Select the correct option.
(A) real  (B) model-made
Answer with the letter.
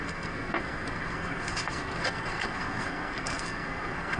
B